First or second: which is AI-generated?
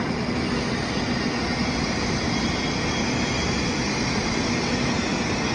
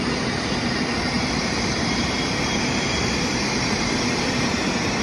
second